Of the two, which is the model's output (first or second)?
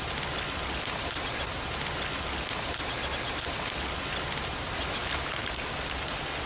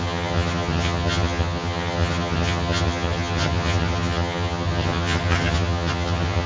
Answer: second